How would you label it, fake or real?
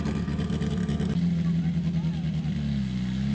real